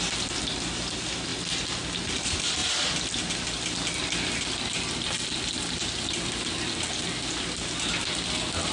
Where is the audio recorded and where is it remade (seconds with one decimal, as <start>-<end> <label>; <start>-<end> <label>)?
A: 0.0-8.7 recorded